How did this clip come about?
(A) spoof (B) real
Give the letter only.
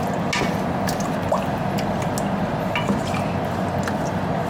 B